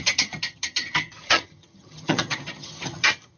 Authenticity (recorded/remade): remade